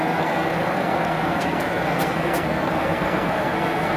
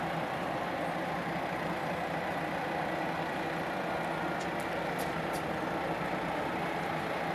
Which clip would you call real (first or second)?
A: second